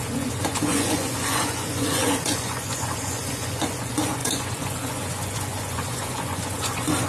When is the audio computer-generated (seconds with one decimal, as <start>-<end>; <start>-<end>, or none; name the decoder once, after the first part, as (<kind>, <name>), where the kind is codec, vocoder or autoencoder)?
0.0-7.1 (vocoder, Vocos)